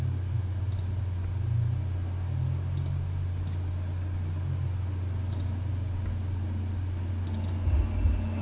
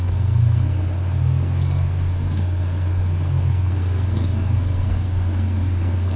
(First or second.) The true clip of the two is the first